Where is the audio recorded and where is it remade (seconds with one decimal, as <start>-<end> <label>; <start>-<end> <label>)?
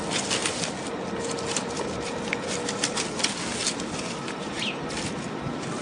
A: 0.0-5.8 recorded